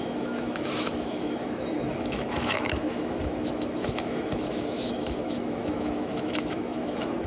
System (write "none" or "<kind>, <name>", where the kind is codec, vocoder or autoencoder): autoencoder, DAC-VAE